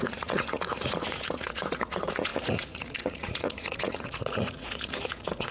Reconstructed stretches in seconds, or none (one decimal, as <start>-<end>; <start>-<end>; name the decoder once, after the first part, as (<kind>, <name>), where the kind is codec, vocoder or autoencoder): 0.0-5.5 (vocoder, Vocos)